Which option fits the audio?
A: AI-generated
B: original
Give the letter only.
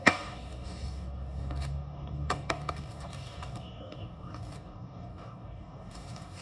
A